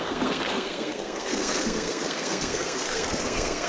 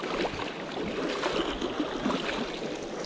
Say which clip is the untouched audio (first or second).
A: second